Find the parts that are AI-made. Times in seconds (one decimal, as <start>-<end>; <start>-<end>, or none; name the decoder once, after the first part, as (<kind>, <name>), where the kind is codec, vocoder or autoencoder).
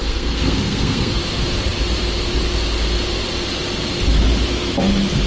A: 0.0-1.2 (codec, SNAC)